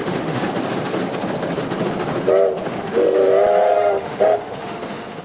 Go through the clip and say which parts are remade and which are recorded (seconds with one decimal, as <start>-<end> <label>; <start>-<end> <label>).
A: 0.0-0.5 remade; 0.5-2.7 recorded; 2.7-3.3 remade; 3.3-3.7 recorded; 3.7-5.2 remade